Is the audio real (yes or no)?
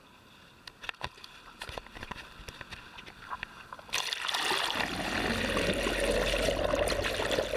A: yes